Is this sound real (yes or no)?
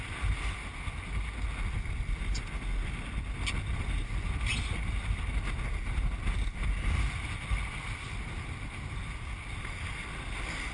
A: yes